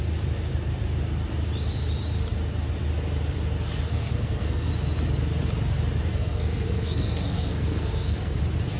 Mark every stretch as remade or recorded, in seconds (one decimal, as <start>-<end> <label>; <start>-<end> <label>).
0.0-3.9 recorded; 3.9-4.7 remade; 4.7-6.1 recorded; 6.1-8.4 remade; 8.4-8.8 recorded